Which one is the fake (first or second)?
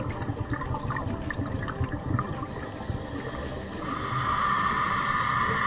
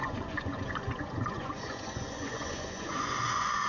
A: second